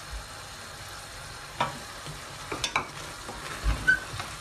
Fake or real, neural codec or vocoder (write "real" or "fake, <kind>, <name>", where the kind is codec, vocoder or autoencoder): real